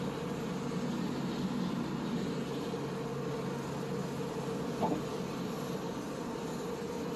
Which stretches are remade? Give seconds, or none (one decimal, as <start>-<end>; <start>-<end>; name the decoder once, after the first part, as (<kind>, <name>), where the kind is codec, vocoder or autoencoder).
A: 5.1-6.4 (vocoder, BigVGAN v2)